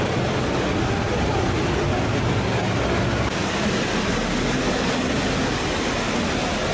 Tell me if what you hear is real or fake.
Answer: real